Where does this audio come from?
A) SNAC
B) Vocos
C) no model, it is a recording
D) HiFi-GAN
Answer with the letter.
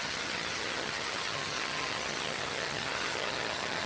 D